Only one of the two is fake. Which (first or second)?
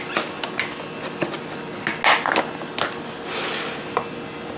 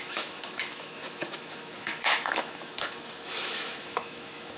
second